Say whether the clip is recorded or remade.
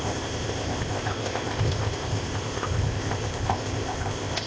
remade